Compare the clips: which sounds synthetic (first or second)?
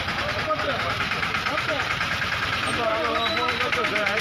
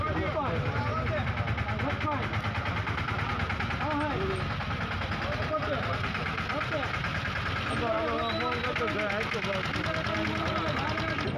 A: first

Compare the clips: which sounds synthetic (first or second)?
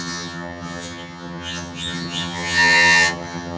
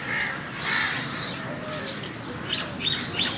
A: first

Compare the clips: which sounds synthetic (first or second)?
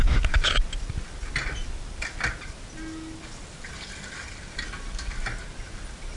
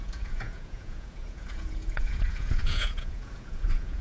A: second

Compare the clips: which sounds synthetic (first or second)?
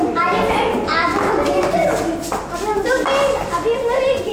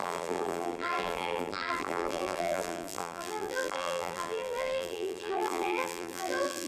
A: second